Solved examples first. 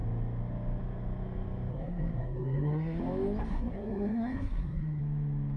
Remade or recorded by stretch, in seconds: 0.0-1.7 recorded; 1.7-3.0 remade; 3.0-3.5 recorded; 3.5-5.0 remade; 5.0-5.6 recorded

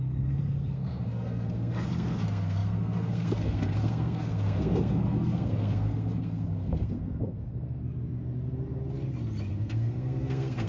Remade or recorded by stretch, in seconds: 0.0-7.8 remade; 7.8-9.5 recorded; 9.5-10.7 remade

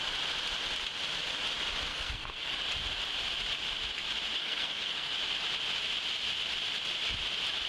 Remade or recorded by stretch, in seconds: 0.0-1.9 recorded; 1.9-2.5 remade; 2.5-4.4 recorded; 4.4-5.1 remade; 5.1-7.7 recorded

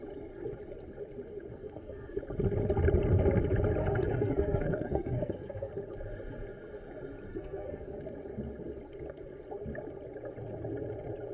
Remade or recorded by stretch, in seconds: 0.0-1.5 recorded; 1.5-2.2 remade; 2.2-3.8 recorded; 3.8-5.7 remade; 5.7-7.3 recorded; 7.3-8.0 remade; 8.0-11.3 recorded

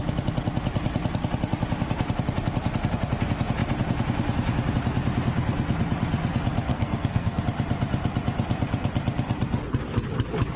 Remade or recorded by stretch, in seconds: 0.0-6.7 recorded; 6.7-7.4 remade; 7.4-10.6 recorded